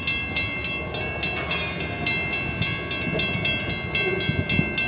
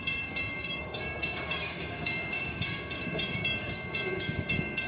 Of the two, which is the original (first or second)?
first